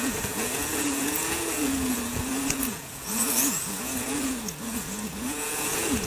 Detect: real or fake fake